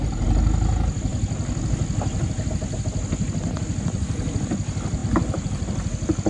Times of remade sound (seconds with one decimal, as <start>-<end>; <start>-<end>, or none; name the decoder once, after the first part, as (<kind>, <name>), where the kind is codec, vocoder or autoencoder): none